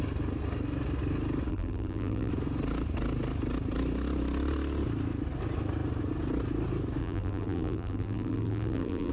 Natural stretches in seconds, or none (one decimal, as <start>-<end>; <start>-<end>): 0.0-1.5; 2.3-7.0

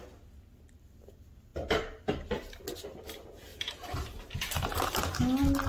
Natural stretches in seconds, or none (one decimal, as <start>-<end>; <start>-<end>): 0.0-3.5; 5.0-5.7